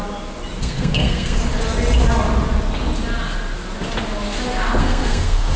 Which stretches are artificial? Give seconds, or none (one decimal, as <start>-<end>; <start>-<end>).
0.6-1.4; 4.8-5.6